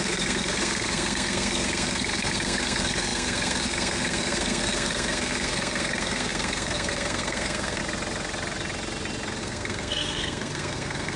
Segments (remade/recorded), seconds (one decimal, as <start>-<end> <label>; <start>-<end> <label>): 0.0-7.8 remade; 7.8-9.4 recorded; 9.4-11.2 remade